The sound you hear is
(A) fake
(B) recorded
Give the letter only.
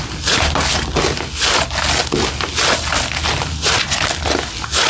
B